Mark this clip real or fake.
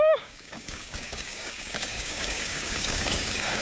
fake